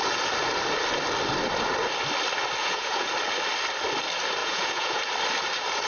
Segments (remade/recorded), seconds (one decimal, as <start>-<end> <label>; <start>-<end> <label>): 0.0-2.6 recorded; 2.6-3.1 remade; 3.1-4.4 recorded; 4.4-5.0 remade; 5.0-5.9 recorded